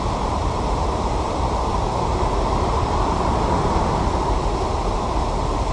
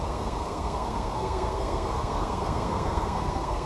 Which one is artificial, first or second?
second